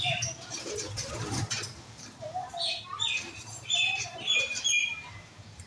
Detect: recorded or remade remade